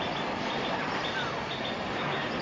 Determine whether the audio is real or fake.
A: real